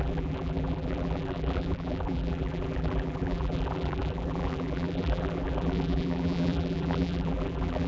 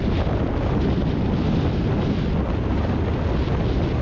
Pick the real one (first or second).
second